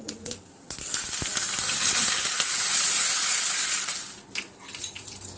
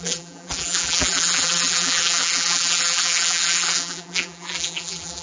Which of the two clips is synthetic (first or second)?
second